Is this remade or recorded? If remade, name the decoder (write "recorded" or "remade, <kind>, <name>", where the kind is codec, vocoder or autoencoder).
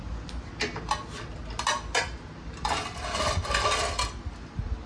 recorded